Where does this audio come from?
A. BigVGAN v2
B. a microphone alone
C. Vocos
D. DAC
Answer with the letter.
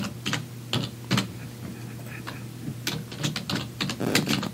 B